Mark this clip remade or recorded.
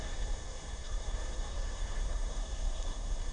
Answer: remade